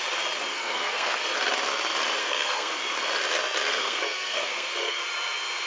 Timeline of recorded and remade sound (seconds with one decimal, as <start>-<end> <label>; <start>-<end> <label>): 0.0-0.5 recorded; 0.5-1.2 remade; 1.2-2.2 recorded; 2.2-2.8 remade; 2.8-3.7 recorded; 3.7-5.0 remade; 5.0-5.7 recorded